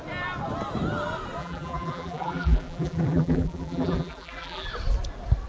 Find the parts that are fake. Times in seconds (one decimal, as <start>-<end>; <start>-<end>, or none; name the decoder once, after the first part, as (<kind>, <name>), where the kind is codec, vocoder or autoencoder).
1.4-4.7 (vocoder, BigVGAN v2)